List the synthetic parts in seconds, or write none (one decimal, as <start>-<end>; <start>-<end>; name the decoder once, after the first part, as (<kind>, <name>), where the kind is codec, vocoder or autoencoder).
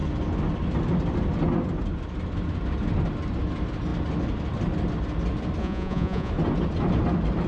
5.6-6.3 (vocoder, Vocos)